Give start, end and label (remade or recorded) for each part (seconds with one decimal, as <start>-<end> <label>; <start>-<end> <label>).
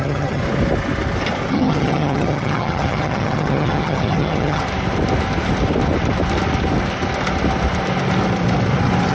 0.0-0.4 remade; 0.4-1.5 recorded; 1.5-4.6 remade; 4.6-9.1 recorded